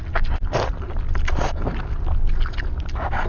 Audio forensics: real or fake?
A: real